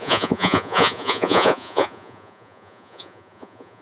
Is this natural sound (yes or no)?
no